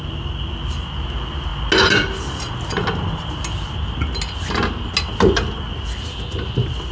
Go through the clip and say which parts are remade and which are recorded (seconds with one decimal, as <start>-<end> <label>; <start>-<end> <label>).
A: 0.0-6.9 recorded